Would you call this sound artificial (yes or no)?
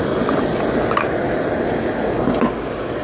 no